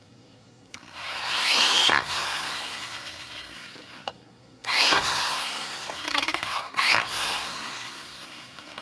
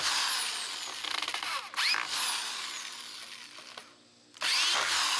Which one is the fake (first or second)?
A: first